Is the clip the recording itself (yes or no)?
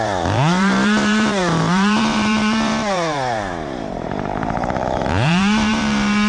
no